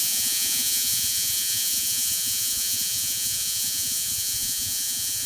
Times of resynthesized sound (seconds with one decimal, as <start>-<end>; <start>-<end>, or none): 0.0-5.3